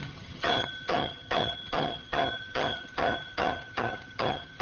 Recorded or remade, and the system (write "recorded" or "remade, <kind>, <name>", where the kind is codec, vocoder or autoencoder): remade, vocoder, HiFi-GAN